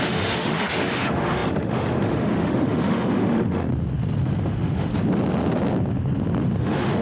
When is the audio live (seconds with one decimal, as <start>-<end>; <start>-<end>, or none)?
3.7-4.4; 4.9-6.6